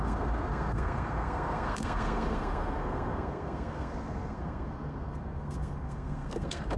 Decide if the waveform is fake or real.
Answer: fake